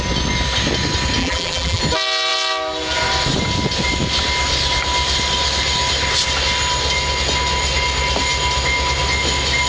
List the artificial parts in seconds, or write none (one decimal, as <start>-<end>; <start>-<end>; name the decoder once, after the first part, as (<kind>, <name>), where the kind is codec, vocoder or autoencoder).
1.2-1.8 (vocoder, BigVGAN v2)